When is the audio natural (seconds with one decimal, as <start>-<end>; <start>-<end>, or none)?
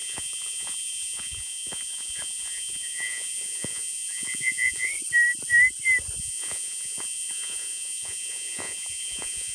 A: 4.9-6.2